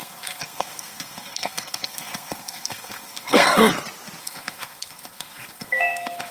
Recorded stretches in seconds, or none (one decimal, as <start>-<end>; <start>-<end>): 3.7-4.2